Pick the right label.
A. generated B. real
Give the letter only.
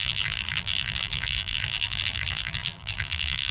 A